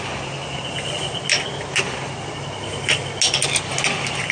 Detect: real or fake real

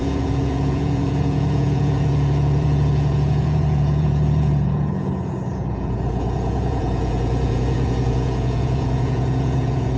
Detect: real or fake fake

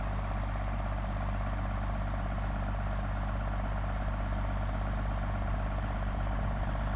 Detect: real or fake real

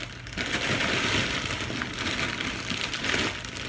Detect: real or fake real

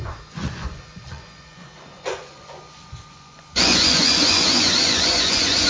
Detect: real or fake fake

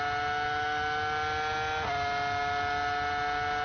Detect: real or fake real